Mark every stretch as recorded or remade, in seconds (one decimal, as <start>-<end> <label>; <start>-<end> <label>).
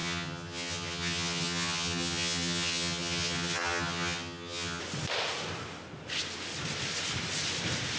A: 0.0-4.8 remade; 4.8-8.0 recorded